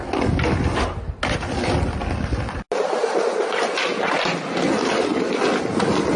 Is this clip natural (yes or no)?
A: yes